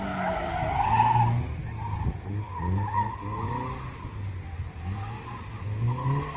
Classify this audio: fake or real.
real